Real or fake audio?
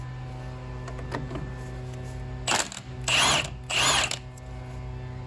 real